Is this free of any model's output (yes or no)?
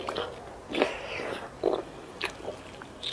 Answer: yes